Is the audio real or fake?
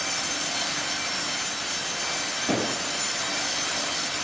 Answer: real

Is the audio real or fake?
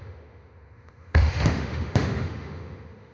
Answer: fake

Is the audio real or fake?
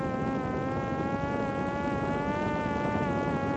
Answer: real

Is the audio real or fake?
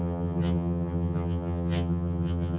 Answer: fake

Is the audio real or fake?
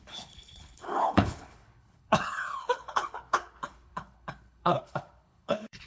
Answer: fake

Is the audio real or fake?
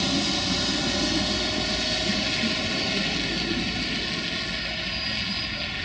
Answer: real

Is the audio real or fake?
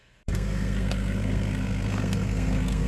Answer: fake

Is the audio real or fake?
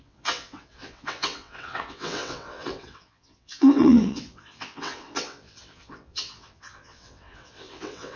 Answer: fake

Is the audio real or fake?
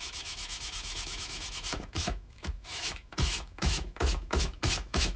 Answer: fake